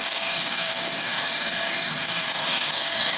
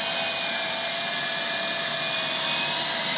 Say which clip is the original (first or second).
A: second